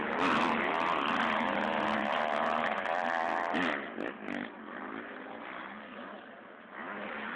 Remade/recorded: recorded